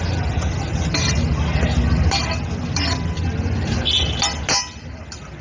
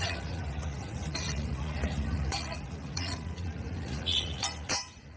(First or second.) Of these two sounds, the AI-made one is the second